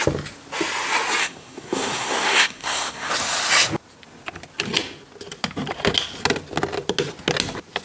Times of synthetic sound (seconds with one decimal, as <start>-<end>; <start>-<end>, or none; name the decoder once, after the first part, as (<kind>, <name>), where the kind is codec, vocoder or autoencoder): 1.2-3.1 (codec, SNAC)